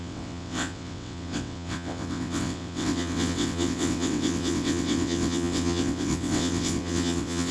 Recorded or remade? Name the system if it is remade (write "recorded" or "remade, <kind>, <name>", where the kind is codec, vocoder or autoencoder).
remade, vocoder, WaveNeXt